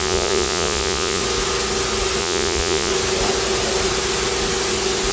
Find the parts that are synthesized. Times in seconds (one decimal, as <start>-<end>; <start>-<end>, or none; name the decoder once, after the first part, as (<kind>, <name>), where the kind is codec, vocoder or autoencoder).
0.0-1.2 (vocoder, Vocos); 2.2-2.9